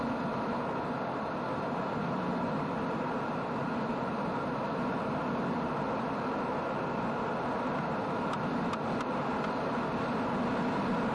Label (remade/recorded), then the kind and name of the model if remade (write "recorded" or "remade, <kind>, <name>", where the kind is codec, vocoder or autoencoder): recorded